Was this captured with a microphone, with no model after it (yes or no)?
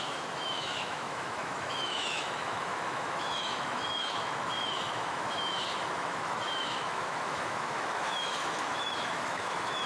no